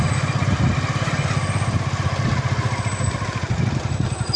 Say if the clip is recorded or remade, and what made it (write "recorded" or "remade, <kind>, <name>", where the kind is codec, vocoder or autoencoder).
recorded